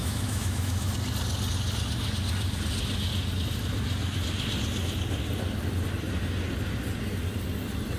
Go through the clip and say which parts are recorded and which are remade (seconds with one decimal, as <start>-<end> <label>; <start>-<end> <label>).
0.0-0.9 remade; 0.9-8.0 recorded

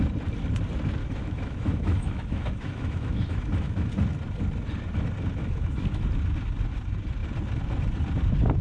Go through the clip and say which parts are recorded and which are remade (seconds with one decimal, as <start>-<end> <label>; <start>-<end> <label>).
0.0-1.0 recorded; 1.0-3.9 remade; 3.9-5.4 recorded; 5.4-6.0 remade; 6.0-8.6 recorded

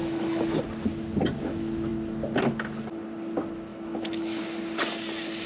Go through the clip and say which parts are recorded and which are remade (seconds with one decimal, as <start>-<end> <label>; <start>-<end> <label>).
0.0-0.6 remade; 0.6-3.7 recorded; 3.7-4.4 remade; 4.4-5.5 recorded

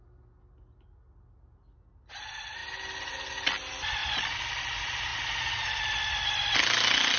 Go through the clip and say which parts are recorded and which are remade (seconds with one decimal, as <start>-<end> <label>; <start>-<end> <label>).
0.0-7.2 recorded

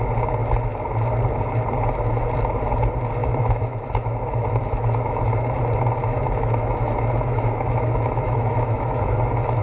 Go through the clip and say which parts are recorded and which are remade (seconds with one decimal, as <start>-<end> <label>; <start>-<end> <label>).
0.0-3.2 recorded; 3.2-5.6 remade; 5.6-6.0 recorded; 6.0-9.6 remade